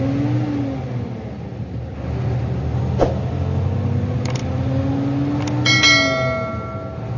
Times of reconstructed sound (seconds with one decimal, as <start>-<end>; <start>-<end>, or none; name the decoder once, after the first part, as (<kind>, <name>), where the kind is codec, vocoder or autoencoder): none